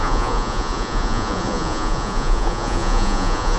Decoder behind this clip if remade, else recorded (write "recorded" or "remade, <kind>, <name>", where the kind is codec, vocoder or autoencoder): remade, vocoder, Vocos